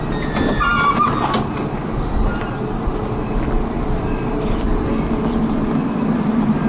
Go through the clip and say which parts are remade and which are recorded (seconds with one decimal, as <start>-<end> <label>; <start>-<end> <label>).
0.0-6.7 recorded